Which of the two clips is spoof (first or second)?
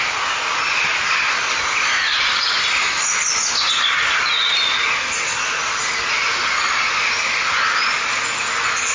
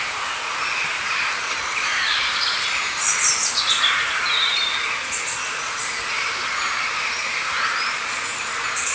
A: second